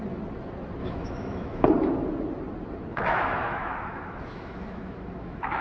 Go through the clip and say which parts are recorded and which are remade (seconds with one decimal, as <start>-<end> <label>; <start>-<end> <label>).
0.0-0.8 recorded; 0.8-1.7 remade; 1.7-2.9 recorded; 2.9-5.6 remade